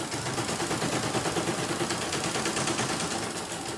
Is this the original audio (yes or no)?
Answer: yes